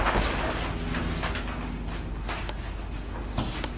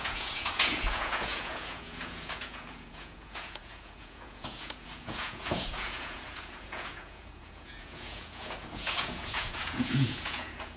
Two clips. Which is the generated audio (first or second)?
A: second